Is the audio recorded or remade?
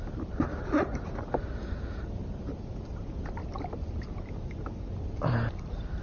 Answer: recorded